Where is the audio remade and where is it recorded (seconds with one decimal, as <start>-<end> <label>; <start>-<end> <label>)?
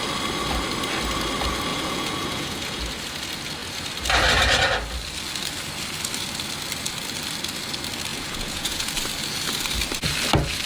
0.0-1.7 recorded; 1.7-2.8 remade; 2.8-8.1 recorded; 8.1-8.9 remade; 8.9-10.7 recorded